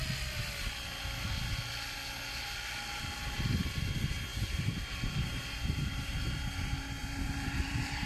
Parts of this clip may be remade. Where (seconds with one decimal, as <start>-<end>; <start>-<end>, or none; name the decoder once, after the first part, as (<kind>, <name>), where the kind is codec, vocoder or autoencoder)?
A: 4.3-6.1 (vocoder, BigVGAN v2); 7.0-8.1

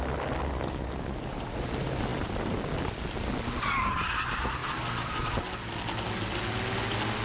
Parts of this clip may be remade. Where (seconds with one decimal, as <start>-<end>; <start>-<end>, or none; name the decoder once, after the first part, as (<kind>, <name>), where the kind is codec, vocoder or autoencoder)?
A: 4.6-5.4 (vocoder, BigVGAN v2)